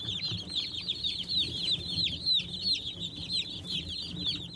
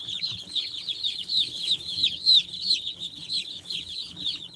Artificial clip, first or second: second